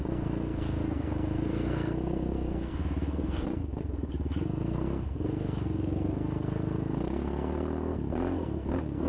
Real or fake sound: fake